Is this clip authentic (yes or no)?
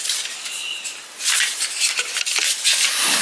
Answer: yes